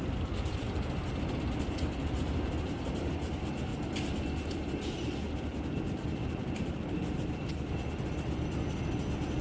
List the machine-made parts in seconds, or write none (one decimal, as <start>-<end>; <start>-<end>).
0.0-3.7; 5.4-9.4